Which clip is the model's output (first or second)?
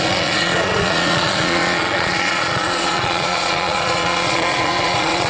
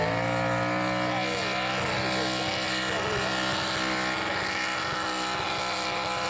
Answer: first